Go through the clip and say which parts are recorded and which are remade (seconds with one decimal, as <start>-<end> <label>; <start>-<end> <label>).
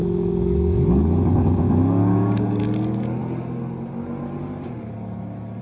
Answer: 0.0-2.6 remade; 2.6-5.6 recorded